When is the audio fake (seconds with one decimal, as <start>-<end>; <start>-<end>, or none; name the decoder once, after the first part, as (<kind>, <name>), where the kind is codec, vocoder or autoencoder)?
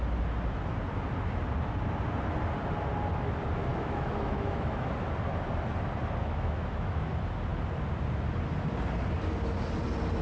3.7-4.9 (autoencoder, DAC-VAE); 6.2-7.1